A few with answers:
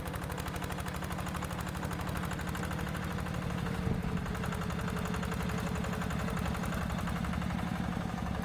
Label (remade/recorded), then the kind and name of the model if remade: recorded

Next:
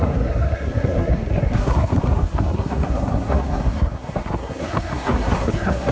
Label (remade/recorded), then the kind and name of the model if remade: remade, codec, SNAC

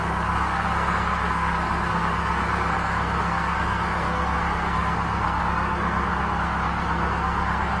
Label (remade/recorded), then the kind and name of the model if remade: remade, codec, SNAC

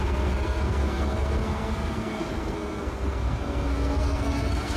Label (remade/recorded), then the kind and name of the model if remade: remade, codec, SNAC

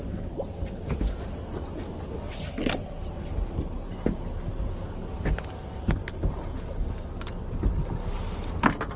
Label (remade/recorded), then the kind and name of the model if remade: recorded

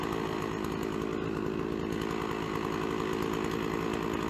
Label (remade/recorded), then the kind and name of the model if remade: recorded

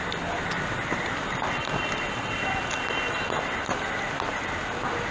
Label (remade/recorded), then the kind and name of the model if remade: recorded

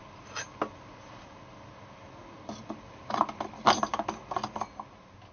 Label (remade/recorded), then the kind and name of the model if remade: recorded